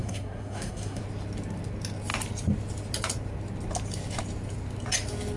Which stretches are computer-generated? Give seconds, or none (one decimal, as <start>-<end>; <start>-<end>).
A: 0.0-1.0